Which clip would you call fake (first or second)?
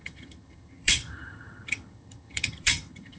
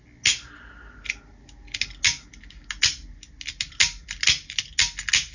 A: first